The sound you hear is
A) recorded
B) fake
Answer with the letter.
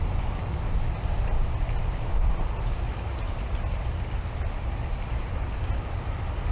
A